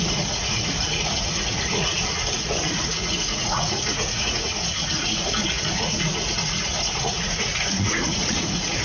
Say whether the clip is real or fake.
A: fake